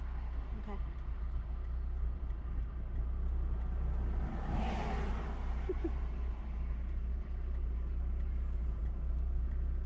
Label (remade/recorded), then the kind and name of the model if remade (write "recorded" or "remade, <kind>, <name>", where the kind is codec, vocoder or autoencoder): recorded